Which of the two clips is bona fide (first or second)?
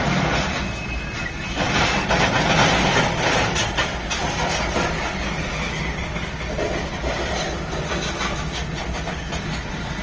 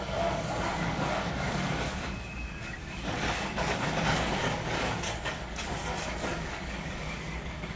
first